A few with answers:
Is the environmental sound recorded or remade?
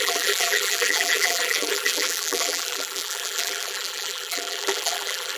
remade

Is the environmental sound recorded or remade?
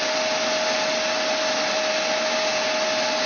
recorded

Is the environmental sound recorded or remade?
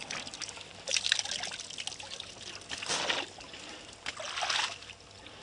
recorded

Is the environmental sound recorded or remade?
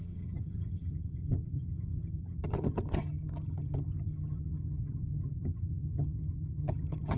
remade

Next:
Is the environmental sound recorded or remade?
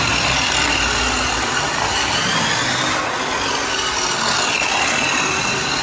recorded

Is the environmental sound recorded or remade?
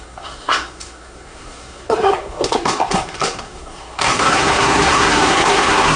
remade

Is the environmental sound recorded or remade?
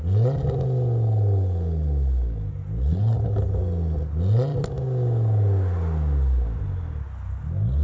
recorded